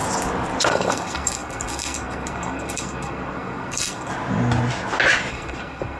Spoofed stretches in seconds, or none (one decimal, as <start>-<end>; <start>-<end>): 0.7-4.1; 5.3-6.0